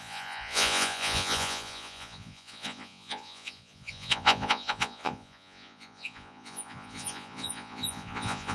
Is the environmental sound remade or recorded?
remade